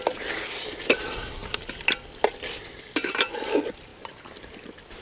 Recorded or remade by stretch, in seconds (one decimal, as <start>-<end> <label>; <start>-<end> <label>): 0.0-5.0 recorded